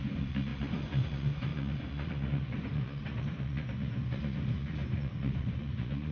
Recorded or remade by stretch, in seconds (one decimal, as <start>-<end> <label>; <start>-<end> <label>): 0.0-6.1 remade